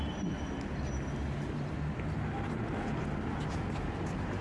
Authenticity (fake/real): real